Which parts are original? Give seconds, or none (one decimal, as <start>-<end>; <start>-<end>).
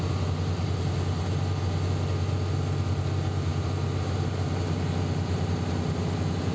0.0-6.5